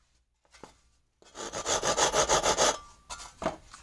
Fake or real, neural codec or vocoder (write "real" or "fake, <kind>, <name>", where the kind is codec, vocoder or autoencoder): real